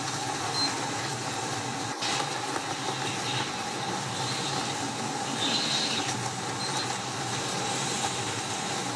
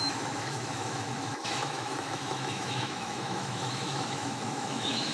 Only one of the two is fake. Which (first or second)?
second